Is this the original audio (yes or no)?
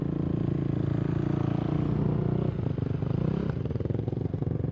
yes